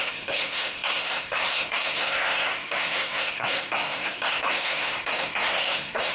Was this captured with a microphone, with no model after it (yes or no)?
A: no